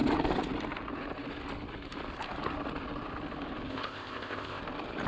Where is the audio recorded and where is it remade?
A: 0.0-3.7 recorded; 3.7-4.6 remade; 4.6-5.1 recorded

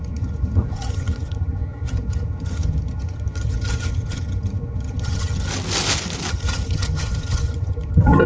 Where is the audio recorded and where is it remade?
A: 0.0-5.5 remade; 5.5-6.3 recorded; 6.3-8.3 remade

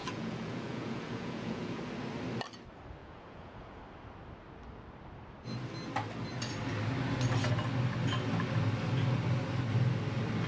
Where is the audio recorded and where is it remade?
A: 0.0-1.8 remade; 1.8-3.0 recorded; 3.0-3.8 remade; 3.8-10.5 recorded